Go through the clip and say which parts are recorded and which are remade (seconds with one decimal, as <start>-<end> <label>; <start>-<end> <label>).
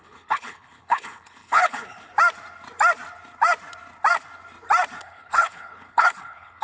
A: 0.0-2.1 remade; 2.1-5.0 recorded; 5.0-6.6 remade